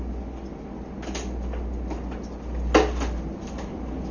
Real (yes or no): yes